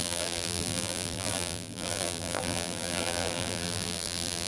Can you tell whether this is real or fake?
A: fake